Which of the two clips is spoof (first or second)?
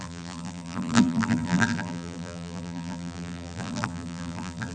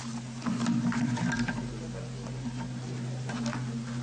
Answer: first